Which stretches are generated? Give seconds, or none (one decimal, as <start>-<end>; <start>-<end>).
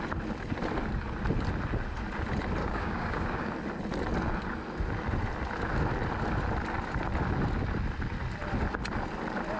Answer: 2.6-3.5